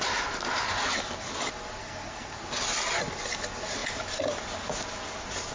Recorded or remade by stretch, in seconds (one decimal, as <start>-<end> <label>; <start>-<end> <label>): 0.0-1.8 recorded; 1.8-2.4 remade; 2.4-5.5 recorded